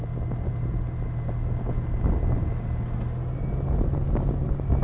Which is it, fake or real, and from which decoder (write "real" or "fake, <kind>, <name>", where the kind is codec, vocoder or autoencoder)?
real